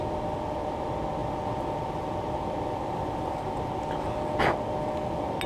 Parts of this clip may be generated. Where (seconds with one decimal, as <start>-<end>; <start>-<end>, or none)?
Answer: none